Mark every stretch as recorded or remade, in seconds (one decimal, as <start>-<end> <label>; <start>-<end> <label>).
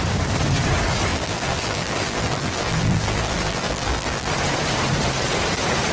0.0-1.1 recorded; 1.1-4.3 remade; 4.3-5.9 recorded